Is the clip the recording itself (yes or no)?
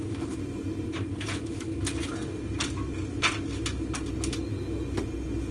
yes